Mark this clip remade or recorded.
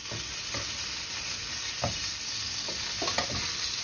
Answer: remade